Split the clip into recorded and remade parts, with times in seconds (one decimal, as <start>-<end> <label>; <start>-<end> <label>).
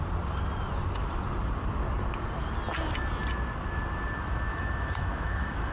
0.0-4.5 recorded; 4.5-5.7 remade